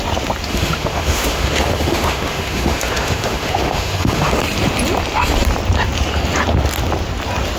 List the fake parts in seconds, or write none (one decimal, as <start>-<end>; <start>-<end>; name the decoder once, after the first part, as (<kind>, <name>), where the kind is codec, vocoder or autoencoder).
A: 0.5-4.4 (autoencoder, DAC-VAE)